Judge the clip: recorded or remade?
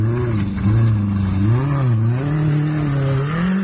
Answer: recorded